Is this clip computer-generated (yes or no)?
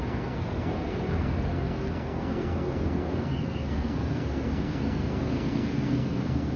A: yes